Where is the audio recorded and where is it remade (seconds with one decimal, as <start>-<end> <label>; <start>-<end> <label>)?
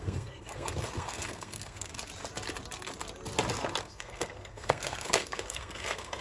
0.0-1.9 remade; 1.9-3.8 recorded; 3.8-6.2 remade